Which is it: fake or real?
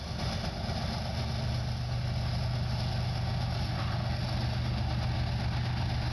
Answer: real